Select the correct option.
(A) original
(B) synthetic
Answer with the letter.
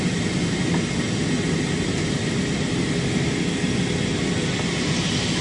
A